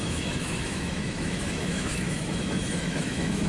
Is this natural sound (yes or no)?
no